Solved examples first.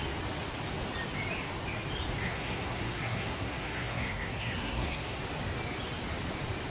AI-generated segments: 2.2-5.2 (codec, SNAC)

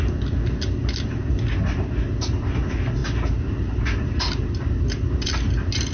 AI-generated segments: none

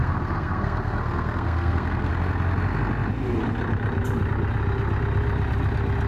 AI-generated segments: 0.0-2.1 (codec, SNAC)